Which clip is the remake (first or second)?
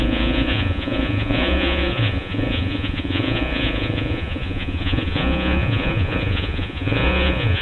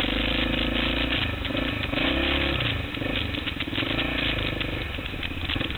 first